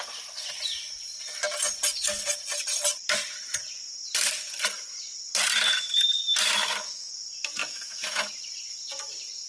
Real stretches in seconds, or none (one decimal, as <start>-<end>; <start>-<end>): 0.0-6.5; 7.1-7.6; 8.3-9.5